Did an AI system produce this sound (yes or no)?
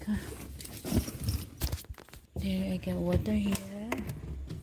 no